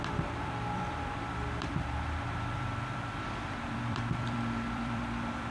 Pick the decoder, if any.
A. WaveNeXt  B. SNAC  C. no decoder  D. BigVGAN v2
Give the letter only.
D